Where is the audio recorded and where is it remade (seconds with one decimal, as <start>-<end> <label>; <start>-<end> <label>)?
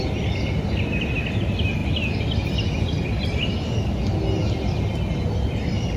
0.0-6.0 recorded